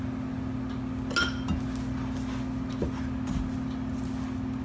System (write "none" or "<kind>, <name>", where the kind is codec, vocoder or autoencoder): none